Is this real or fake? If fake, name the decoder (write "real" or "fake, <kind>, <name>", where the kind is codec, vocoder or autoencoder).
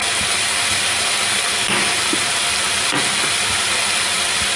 real